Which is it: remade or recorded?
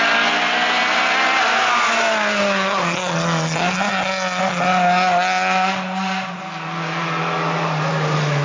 recorded